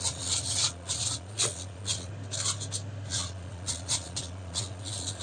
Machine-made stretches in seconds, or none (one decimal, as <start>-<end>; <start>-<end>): 0.0-2.1; 3.1-5.2